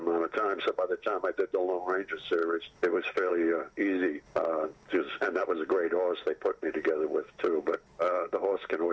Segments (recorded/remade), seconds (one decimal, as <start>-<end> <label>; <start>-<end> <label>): 0.0-8.9 recorded